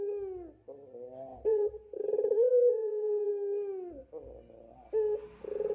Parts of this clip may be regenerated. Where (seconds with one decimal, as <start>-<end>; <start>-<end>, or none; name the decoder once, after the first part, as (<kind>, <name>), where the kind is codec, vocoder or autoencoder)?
1.3-2.0 (vocoder, Vocos); 2.5-3.3